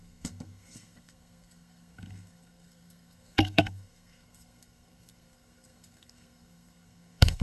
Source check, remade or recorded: remade